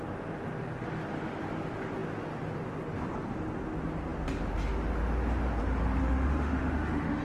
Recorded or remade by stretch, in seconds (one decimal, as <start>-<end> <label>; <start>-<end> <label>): 0.0-6.0 recorded; 6.0-7.2 remade